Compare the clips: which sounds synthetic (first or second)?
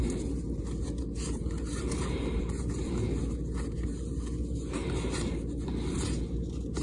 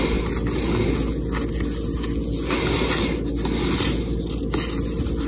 first